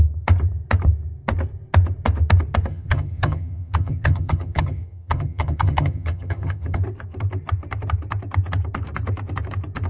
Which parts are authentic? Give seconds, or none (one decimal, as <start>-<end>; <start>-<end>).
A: 0.0-2.7; 6.8-9.9